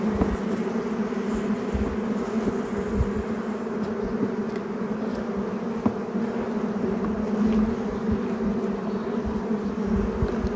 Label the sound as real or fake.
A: real